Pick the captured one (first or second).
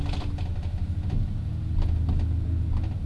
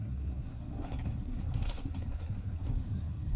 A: first